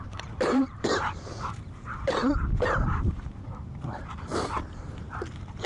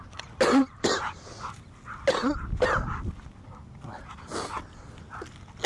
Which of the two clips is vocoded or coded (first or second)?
first